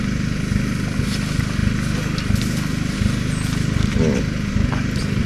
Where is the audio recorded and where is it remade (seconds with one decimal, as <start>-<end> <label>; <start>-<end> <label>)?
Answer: 0.0-5.3 recorded